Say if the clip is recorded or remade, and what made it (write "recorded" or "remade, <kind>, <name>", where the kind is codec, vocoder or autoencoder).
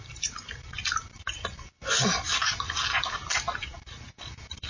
remade, vocoder, BigVGAN v2